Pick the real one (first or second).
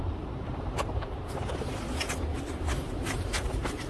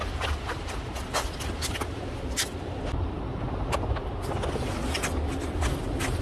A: second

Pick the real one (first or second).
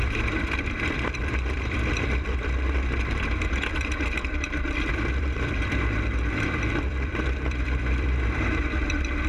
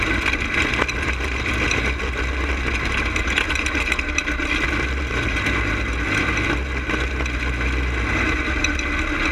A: second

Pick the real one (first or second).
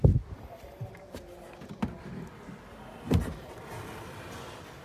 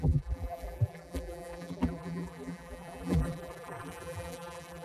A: first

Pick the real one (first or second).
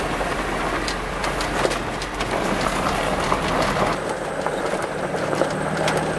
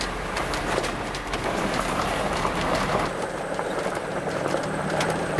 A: first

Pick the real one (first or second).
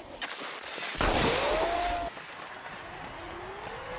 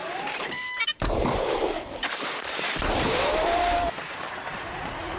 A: first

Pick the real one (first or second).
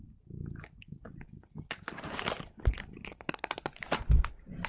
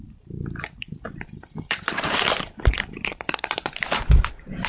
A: first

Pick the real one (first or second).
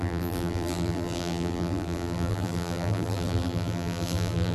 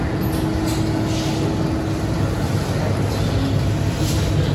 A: second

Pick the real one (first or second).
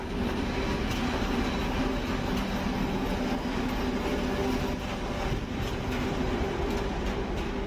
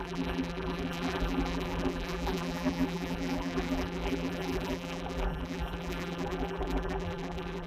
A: first